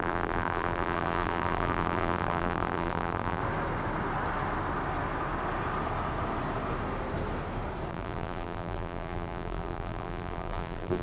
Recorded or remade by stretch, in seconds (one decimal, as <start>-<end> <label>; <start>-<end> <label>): 0.0-3.4 remade; 3.4-7.9 recorded; 7.9-11.0 remade